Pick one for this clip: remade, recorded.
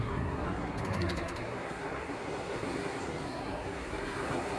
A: remade